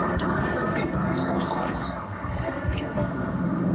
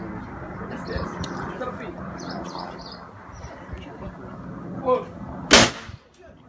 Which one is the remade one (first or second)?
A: first